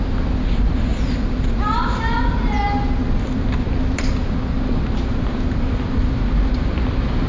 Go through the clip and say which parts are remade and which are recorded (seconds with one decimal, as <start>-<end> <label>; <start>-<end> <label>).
0.0-7.3 recorded